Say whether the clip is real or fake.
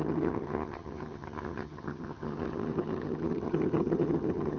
fake